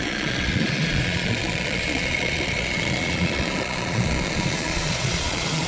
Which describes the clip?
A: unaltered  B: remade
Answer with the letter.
B